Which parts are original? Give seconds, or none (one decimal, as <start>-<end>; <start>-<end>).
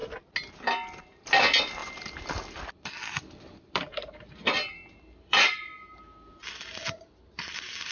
0.0-1.0; 5.7-7.3